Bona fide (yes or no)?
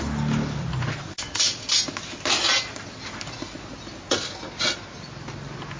yes